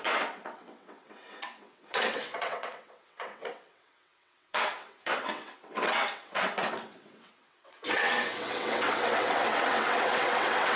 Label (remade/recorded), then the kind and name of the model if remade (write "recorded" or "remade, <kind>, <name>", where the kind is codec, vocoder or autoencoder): remade, vocoder, WaveNeXt